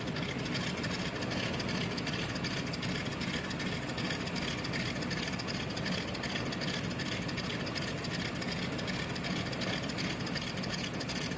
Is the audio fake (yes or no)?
no